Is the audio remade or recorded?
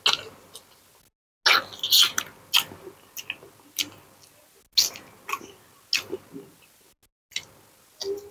recorded